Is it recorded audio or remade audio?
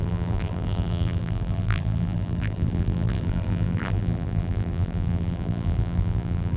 remade